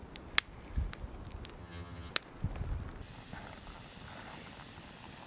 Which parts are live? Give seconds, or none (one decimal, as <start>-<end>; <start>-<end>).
0.0-1.6; 2.1-5.3